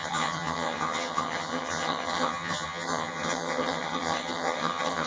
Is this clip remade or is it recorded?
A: remade